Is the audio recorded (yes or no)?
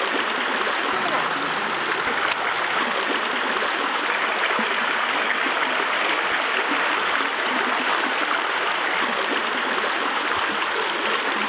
yes